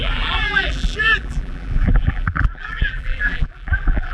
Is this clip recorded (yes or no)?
no